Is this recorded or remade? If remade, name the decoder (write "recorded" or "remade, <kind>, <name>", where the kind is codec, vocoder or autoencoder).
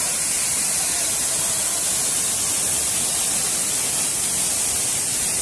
recorded